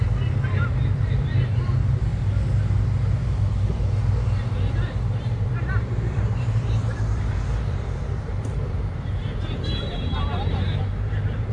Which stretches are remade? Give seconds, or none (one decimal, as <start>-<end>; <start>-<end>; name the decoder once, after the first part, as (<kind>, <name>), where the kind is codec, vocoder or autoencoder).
0.0-2.1 (vocoder, BigVGAN v2); 5.2-11.5